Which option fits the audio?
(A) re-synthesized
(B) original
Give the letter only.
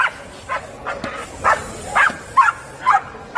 B